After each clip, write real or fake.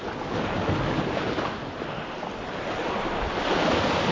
real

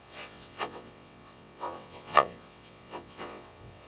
fake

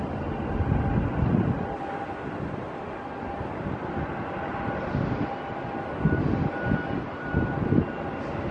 real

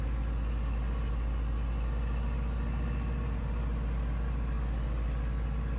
real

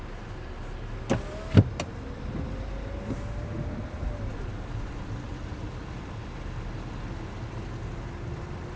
real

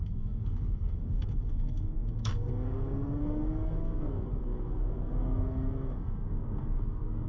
fake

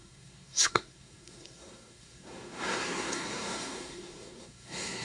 fake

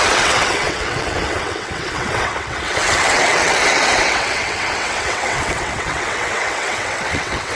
fake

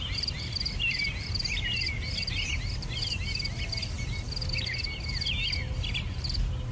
real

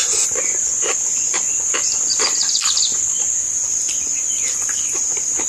real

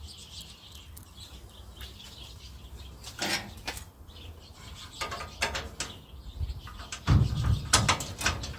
real